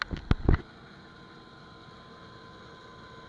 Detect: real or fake real